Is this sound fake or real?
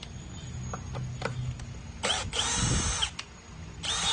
real